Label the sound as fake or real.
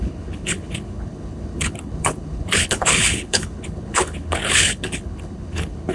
fake